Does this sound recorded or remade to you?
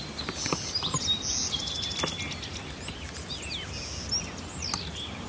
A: recorded